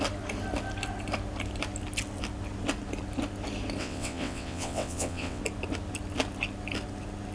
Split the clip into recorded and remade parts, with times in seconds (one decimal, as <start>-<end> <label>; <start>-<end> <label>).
0.0-3.8 recorded; 3.8-5.4 remade; 5.4-7.3 recorded